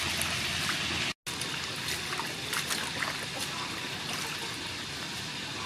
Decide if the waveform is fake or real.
real